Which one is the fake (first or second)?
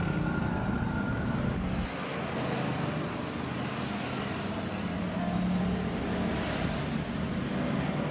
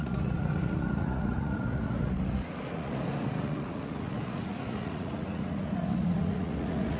second